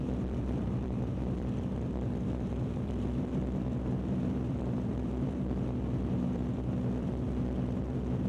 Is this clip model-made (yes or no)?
yes